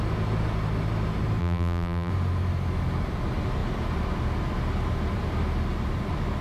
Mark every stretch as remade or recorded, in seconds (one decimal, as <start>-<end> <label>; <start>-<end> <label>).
0.0-1.4 recorded; 1.4-2.1 remade; 2.1-6.4 recorded